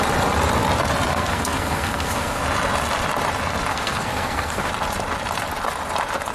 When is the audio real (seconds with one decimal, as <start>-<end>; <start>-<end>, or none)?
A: 0.0-1.1; 2.4-3.7; 4.7-6.3